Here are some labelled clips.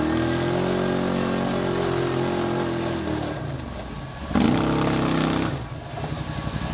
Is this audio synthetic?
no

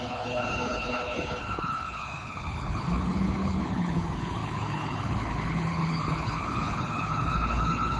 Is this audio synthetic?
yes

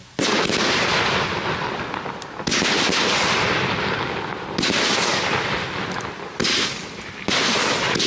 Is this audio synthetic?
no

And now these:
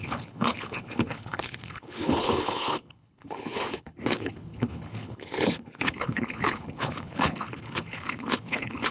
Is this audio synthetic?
yes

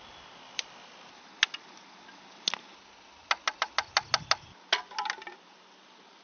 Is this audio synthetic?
no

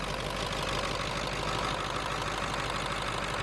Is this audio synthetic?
no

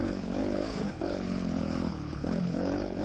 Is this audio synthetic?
yes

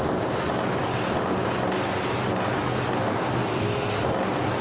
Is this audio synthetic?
no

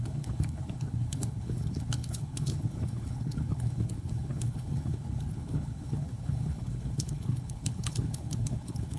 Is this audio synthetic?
yes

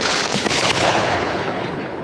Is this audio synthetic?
yes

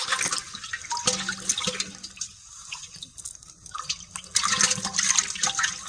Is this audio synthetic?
no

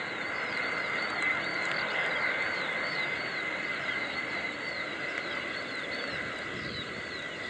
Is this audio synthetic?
no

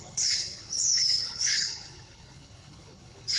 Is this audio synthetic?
yes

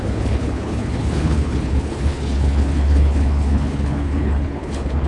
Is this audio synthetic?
yes